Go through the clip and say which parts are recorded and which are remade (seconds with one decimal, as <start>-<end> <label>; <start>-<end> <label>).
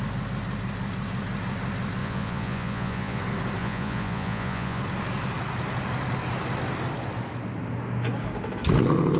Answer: 0.0-2.0 recorded; 2.0-3.2 remade; 3.2-3.6 recorded; 3.6-4.8 remade; 4.8-9.2 recorded